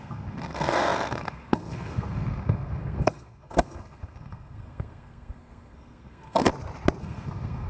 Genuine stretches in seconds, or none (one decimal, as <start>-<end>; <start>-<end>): 6.5-7.0